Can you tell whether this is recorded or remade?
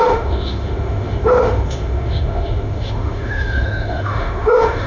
remade